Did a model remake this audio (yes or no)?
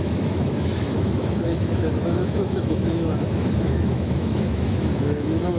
yes